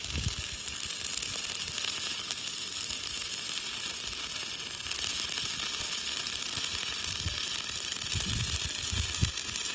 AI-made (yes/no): no